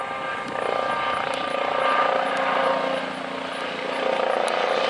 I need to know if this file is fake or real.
real